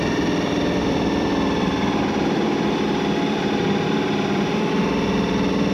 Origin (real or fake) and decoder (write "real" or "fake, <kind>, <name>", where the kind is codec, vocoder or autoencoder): fake, vocoder, BigVGAN v2